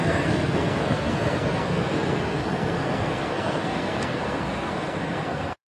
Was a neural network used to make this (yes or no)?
yes